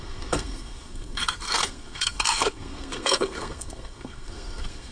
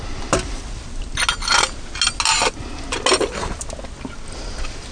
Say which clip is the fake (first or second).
first